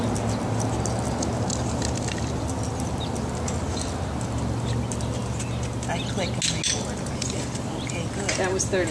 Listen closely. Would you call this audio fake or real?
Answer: real